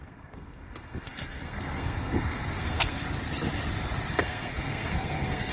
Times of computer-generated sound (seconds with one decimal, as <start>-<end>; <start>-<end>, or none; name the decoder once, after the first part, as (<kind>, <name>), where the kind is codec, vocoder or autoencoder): 0.0-3.0 (codec, SNAC); 4.1-5.5